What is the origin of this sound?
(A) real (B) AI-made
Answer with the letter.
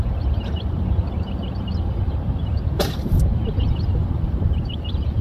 B